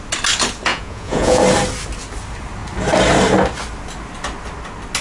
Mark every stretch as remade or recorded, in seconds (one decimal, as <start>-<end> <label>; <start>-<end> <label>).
0.0-0.7 recorded; 0.7-1.4 remade; 1.4-5.0 recorded